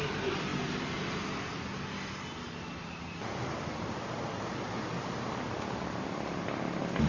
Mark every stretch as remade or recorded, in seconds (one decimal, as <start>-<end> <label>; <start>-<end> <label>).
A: 0.0-7.1 recorded